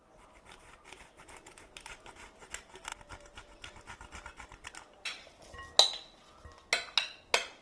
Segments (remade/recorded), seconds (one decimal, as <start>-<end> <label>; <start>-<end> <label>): 0.0-7.6 recorded